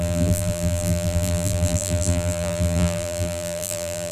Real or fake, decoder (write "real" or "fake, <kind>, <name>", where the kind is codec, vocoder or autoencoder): fake, vocoder, BigVGAN v2